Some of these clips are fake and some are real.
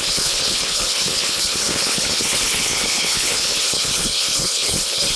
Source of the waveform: fake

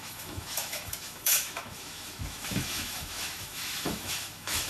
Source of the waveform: fake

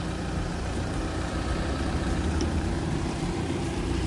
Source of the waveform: fake